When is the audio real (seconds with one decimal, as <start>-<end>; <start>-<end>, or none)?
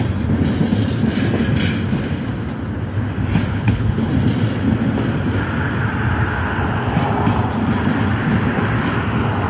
0.0-3.5; 4.1-9.5